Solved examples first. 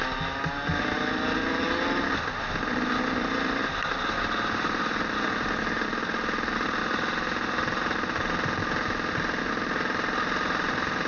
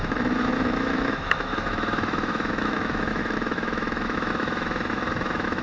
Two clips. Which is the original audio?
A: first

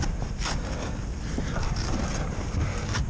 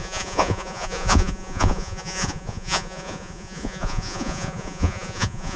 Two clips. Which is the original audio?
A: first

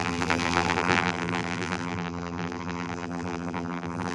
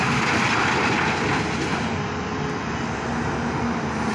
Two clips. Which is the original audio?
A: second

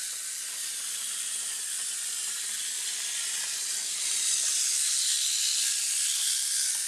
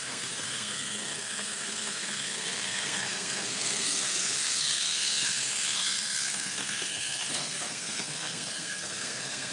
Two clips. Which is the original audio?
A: first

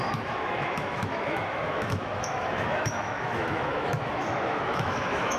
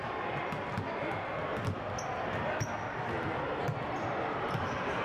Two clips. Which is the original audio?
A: second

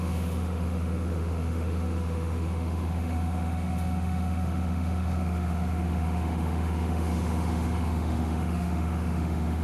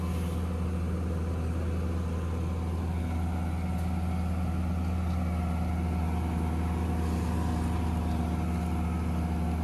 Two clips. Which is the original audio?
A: second